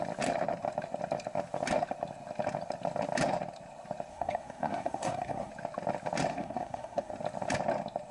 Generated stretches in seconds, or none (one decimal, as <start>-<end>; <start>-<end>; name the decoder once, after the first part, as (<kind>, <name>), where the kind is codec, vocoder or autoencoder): 4.1-5.5 (codec, SNAC); 6.3-7.1